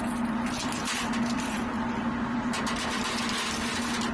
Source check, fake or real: real